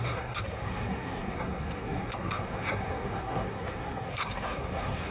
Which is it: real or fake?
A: fake